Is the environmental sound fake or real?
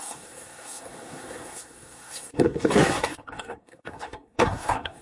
fake